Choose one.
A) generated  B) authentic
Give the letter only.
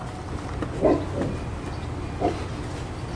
B